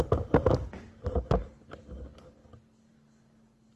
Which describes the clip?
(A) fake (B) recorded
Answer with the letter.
B